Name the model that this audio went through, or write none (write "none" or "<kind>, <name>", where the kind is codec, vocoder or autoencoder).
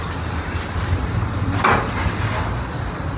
none